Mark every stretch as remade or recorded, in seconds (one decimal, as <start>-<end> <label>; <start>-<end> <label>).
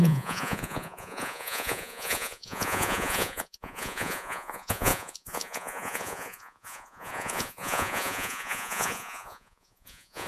0.0-10.3 remade